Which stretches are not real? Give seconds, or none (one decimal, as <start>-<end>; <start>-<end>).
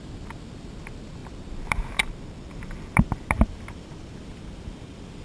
0.0-5.2